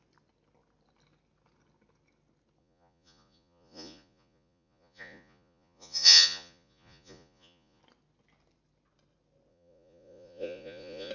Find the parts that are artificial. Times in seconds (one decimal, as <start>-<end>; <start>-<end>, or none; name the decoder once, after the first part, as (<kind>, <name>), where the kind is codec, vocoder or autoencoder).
2.6-7.8 (vocoder, Vocos); 9.5-11.1